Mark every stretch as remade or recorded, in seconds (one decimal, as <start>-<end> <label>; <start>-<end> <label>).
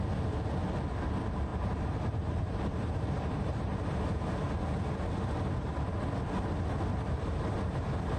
0.0-1.5 recorded; 1.5-4.1 remade; 4.1-8.2 recorded